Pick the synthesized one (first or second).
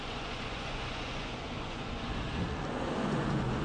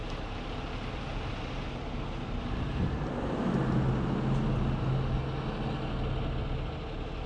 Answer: first